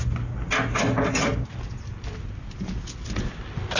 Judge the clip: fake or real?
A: real